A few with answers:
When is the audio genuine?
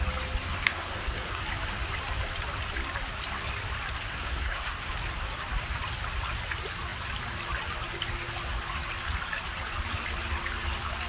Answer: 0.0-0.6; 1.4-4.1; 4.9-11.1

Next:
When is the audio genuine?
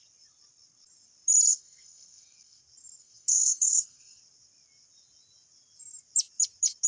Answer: 0.0-1.5; 2.6-3.0; 4.2-6.9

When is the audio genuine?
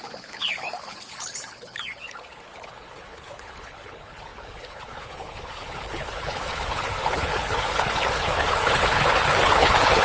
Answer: none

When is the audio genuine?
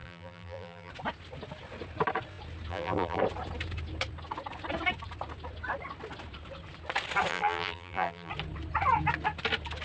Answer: 0.9-2.7; 3.2-7.3; 8.3-9.8